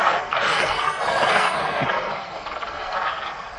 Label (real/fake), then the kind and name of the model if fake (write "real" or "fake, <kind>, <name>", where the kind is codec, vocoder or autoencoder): fake, codec, SNAC